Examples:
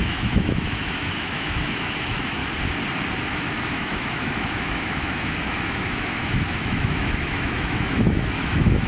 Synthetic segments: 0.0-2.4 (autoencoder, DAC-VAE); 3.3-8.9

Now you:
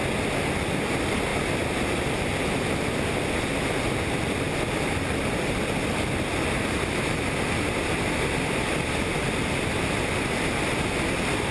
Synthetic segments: none

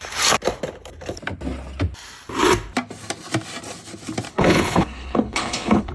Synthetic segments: 4.3-5.9 (codec, HILCodec)

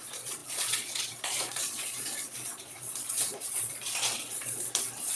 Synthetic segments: 0.0-5.2 (vocoder, Vocos)

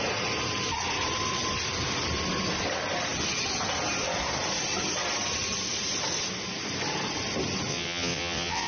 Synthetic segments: 7.7-8.7 (vocoder, WaveNeXt)

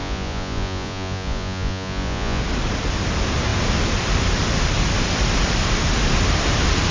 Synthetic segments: 0.0-2.4 (vocoder, Vocos)

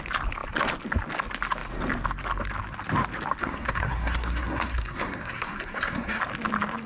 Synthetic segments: 3.4-6.2 (codec, SNAC)